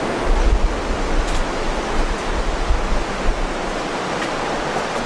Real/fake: real